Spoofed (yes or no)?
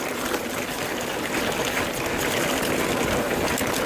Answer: no